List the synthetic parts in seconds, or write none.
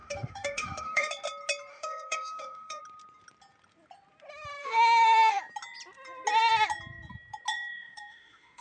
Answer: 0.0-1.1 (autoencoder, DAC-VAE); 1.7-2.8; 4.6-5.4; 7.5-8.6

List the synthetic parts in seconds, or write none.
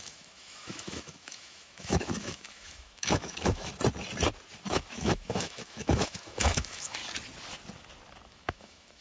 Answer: 0.0-3.7 (autoencoder, DAC-VAE); 4.7-7.0; 8.3-9.0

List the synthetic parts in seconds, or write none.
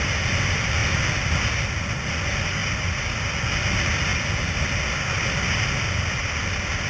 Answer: none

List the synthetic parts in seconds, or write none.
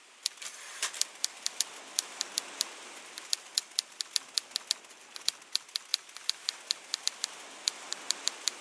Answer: none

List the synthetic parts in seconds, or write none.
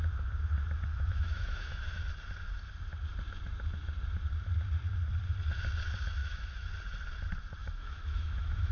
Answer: 0.9-2.0 (autoencoder, DAC-VAE); 6.2-6.7; 7.6-8.7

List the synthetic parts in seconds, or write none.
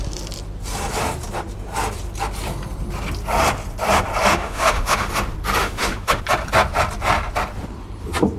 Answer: 4.3-5.1 (autoencoder, DAC-VAE); 5.6-6.2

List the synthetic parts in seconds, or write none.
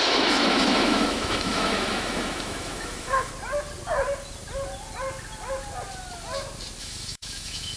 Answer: 0.0-3.3 (autoencoder, DAC-VAE); 6.8-7.8